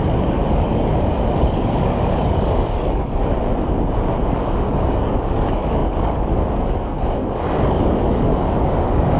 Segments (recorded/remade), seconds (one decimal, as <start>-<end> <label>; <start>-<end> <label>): 0.0-3.2 remade; 3.2-4.2 recorded; 4.2-9.2 remade